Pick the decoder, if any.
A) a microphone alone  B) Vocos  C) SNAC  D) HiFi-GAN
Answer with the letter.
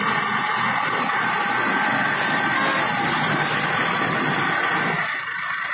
A